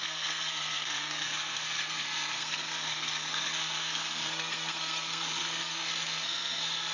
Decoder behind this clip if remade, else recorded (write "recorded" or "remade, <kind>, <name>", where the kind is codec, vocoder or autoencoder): remade, codec, SNAC